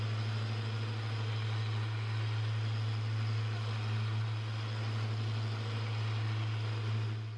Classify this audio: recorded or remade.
recorded